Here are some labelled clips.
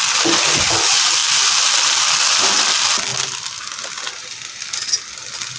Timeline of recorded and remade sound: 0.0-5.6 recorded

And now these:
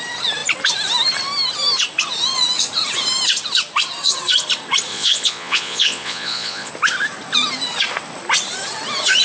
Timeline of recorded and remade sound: 0.0-4.9 recorded; 4.9-6.7 remade; 6.7-9.2 recorded